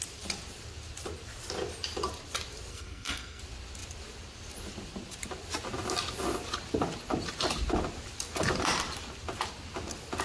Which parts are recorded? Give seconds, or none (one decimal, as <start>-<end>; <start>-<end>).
0.0-2.7; 3.4-10.2